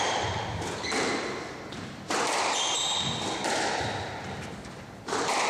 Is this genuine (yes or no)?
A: yes